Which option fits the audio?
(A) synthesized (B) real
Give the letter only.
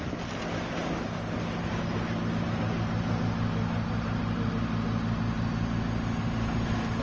B